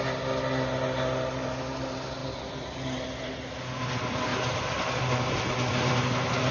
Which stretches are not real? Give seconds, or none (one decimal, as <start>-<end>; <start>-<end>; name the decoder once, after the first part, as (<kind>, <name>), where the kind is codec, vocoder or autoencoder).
2.2-3.3 (vocoder, BigVGAN v2)